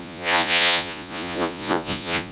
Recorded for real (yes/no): no